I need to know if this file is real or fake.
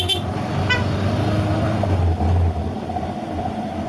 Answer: real